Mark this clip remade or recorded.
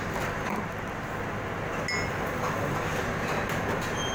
recorded